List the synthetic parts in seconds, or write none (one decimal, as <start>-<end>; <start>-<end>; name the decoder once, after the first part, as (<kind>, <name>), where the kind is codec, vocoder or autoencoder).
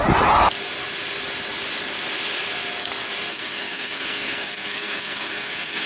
3.3-5.9 (codec, SNAC)